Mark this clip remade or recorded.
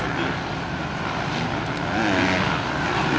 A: recorded